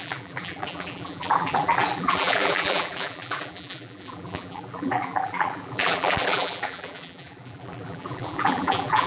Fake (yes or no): yes